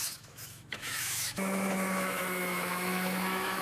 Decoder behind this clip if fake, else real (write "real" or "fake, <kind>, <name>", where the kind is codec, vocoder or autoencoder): fake, autoencoder, DAC-VAE